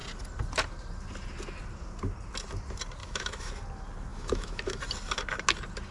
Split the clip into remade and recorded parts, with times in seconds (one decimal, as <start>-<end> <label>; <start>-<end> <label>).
0.0-3.0 recorded; 3.0-3.5 remade; 3.5-4.1 recorded; 4.1-4.8 remade; 4.8-5.9 recorded